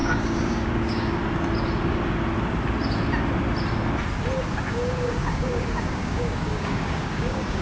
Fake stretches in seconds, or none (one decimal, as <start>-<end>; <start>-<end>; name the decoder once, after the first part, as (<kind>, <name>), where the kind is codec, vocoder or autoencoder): 0.0-1.2 (codec, DAC); 4.7-7.6